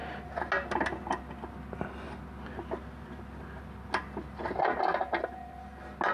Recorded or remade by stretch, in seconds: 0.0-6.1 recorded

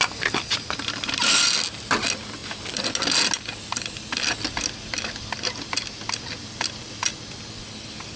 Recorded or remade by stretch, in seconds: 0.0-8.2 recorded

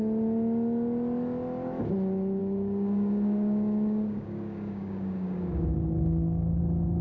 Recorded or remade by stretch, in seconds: 0.0-2.4 recorded; 2.4-6.6 remade; 6.6-7.0 recorded

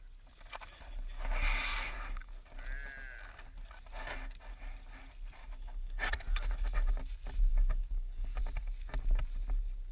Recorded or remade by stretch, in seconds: 0.0-1.7 recorded; 1.7-2.3 remade; 2.3-5.4 recorded; 5.4-6.9 remade; 6.9-7.5 recorded; 7.5-8.4 remade; 8.4-9.9 recorded

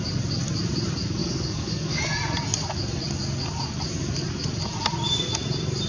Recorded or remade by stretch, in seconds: 0.0-1.2 recorded; 1.2-2.0 remade; 2.0-5.9 recorded

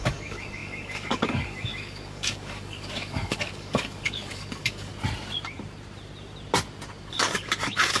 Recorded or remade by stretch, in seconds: 0.0-4.9 remade; 4.9-7.1 recorded; 7.1-8.0 remade